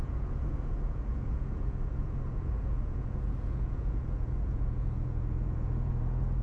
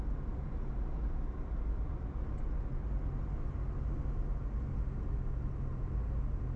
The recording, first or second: second